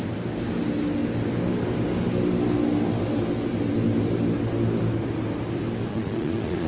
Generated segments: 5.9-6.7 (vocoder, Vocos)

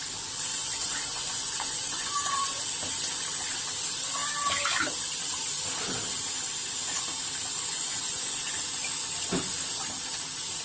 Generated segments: 0.5-2.6 (vocoder, Vocos); 7.7-8.8

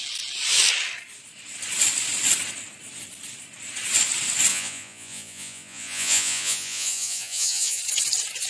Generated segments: 4.5-7.8 (vocoder, Vocos)

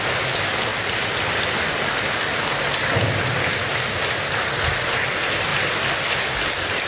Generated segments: none

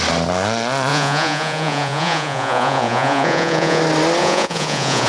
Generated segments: 0.9-3.8 (vocoder, Vocos); 4.2-5.1

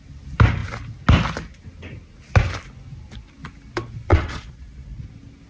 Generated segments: 4.1-5.0 (vocoder, Vocos)

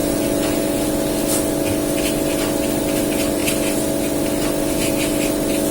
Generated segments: 0.0-0.9 (vocoder, Vocos)

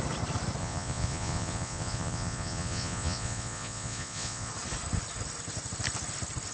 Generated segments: 0.6-4.5 (vocoder, Vocos)